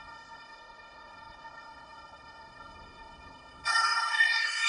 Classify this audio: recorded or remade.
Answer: remade